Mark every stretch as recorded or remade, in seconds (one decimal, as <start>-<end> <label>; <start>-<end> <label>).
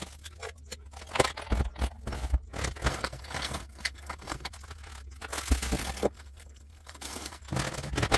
0.0-2.9 recorded; 2.9-4.5 remade; 4.5-5.8 recorded; 5.8-7.4 remade; 7.4-8.2 recorded